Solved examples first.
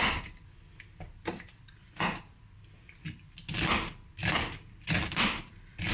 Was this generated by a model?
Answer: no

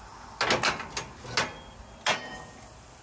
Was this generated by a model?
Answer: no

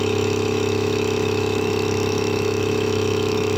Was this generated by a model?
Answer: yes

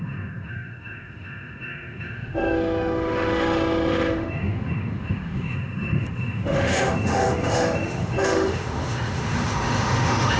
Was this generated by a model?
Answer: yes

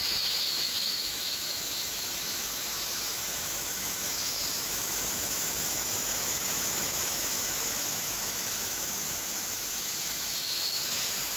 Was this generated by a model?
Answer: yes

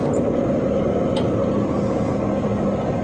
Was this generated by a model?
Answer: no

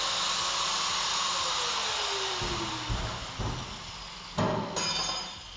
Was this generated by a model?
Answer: no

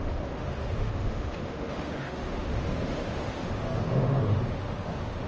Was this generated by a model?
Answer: yes